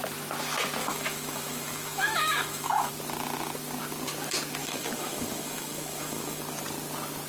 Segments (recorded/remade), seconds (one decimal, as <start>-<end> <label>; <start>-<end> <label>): 0.0-0.8 recorded; 0.8-2.9 remade; 2.9-4.6 recorded; 4.6-6.4 remade; 6.4-7.3 recorded